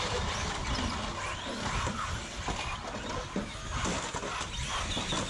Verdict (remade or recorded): recorded